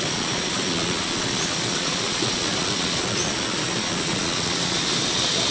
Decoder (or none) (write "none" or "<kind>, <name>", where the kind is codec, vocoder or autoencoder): vocoder, Vocos